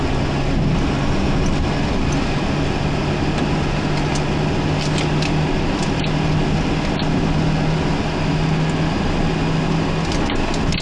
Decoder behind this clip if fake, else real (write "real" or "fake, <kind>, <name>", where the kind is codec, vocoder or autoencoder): real